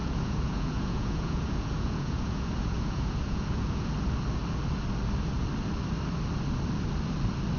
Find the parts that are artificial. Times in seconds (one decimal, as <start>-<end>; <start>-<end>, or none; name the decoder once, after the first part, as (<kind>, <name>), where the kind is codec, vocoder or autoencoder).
0.0-3.9 (vocoder, Vocos)